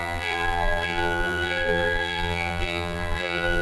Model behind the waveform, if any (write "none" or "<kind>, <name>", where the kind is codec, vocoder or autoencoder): vocoder, BigVGAN v2